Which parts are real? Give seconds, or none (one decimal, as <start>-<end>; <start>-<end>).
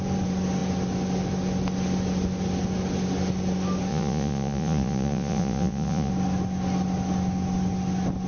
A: 0.0-3.9; 6.1-8.3